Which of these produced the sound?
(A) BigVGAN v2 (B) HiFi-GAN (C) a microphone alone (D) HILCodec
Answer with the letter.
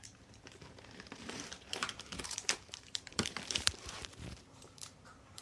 A